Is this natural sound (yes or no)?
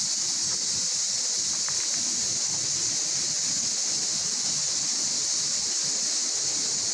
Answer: yes